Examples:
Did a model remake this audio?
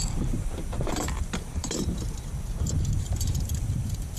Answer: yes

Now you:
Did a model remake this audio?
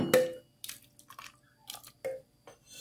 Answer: no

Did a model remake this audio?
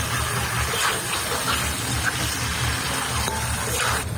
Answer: no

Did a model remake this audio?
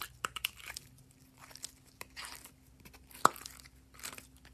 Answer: no